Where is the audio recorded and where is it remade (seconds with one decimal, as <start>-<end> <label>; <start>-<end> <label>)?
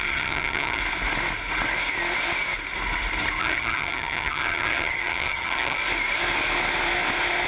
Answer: 0.0-0.8 remade; 0.8-3.4 recorded; 3.4-5.8 remade; 5.8-7.5 recorded